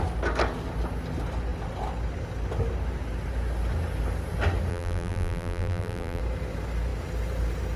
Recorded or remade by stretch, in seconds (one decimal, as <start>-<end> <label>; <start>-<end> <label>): 0.0-4.7 recorded; 4.7-6.2 remade; 6.2-7.8 recorded

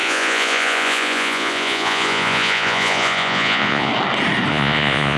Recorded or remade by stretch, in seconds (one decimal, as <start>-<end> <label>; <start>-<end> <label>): 0.0-3.9 remade; 3.9-4.5 recorded; 4.5-5.2 remade

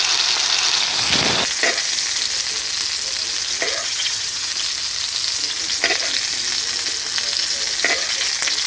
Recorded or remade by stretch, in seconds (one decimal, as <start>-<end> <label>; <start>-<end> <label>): 0.0-3.8 recorded; 3.8-4.5 remade; 4.5-8.7 recorded

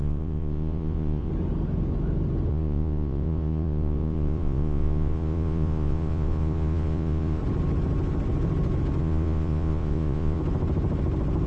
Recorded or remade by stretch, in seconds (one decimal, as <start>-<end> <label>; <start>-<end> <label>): 0.0-1.3 remade; 1.3-2.5 recorded; 2.5-7.4 remade; 7.4-9.0 recorded; 9.0-10.4 remade; 10.4-11.5 recorded

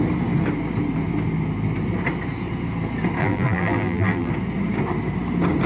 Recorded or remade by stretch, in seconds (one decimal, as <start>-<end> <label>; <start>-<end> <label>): 0.0-3.2 recorded; 3.2-4.3 remade; 4.3-5.7 recorded

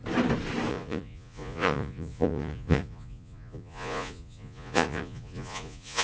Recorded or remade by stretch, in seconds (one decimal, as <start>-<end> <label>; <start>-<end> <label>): 0.0-0.7 recorded; 0.7-6.0 remade

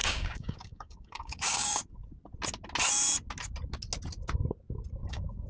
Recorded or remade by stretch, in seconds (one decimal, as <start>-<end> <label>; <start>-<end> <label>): 0.0-1.8 remade; 1.8-5.1 recorded; 5.1-5.5 remade

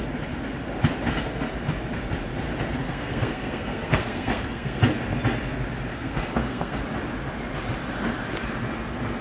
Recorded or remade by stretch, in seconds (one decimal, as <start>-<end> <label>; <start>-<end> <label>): 0.0-2.8 recorded; 2.8-4.8 remade; 4.8-5.9 recorded; 5.9-6.8 remade; 6.8-9.2 recorded